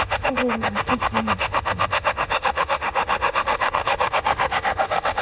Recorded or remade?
remade